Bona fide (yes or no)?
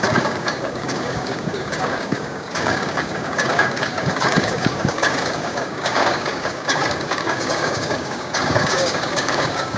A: no